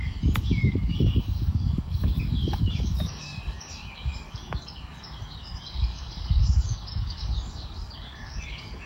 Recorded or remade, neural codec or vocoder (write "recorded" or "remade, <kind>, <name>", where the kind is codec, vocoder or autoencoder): remade, codec, DAC